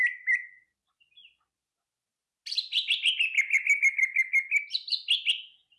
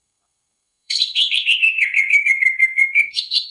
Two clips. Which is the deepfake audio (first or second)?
second